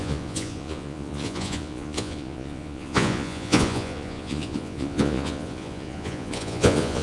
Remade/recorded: remade